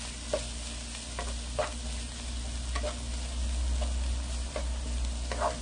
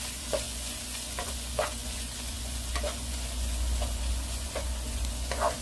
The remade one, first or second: second